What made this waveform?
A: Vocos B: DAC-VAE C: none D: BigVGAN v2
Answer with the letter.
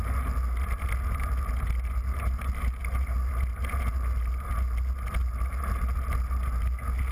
C